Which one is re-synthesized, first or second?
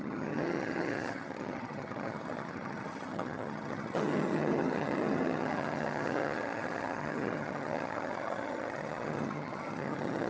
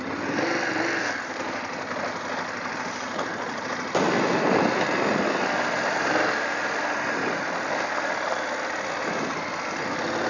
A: first